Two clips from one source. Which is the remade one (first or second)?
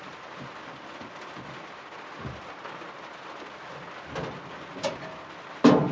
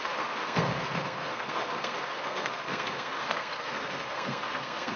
second